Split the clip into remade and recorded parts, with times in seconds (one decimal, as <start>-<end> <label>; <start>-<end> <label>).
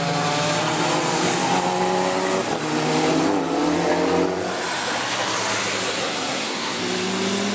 0.0-6.0 recorded; 6.0-6.8 remade; 6.8-7.5 recorded